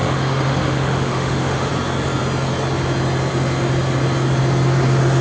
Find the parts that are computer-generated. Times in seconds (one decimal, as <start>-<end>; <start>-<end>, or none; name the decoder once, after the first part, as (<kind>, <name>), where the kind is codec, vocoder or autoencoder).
0.0-1.7 (autoencoder, DAC-VAE)